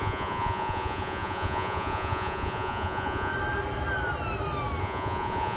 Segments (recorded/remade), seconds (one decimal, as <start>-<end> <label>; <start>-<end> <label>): 0.0-3.3 remade; 3.3-4.8 recorded; 4.8-5.6 remade